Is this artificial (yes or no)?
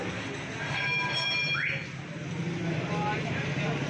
no